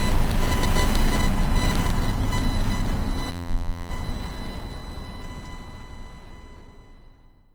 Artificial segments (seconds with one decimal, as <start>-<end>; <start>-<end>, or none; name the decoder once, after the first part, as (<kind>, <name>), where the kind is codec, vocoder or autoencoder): 3.3-3.9 (vocoder, BigVGAN v2)